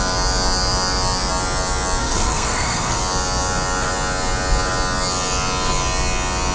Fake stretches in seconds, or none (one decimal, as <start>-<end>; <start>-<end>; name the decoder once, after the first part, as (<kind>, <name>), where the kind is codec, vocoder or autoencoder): 2.0-3.0 (codec, SNAC)